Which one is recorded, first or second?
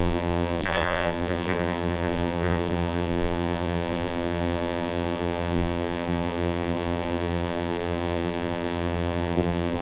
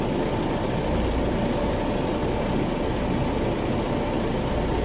second